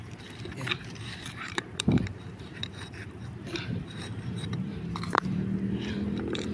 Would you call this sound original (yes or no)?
no